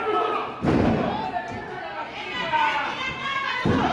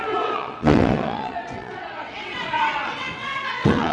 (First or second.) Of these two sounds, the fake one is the second